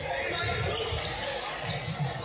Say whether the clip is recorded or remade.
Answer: recorded